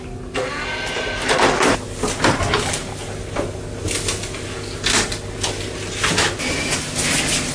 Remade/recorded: recorded